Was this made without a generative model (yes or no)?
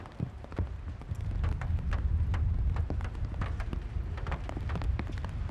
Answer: yes